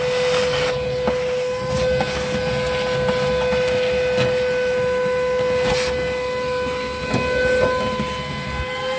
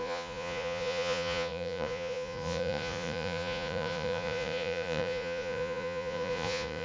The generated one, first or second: second